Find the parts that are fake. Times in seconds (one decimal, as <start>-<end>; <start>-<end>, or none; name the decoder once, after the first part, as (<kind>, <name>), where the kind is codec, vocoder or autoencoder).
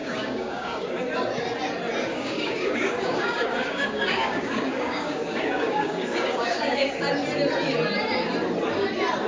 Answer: 0.0-1.0 (codec, DAC); 2.1-7.0